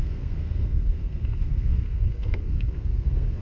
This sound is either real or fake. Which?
fake